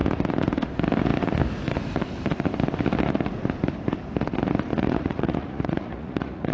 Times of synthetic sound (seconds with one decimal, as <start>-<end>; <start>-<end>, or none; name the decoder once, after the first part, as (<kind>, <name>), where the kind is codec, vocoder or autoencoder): 4.7-6.5 (vocoder, Vocos)